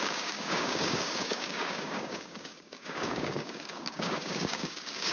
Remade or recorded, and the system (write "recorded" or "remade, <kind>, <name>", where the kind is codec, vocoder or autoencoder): remade, codec, DAC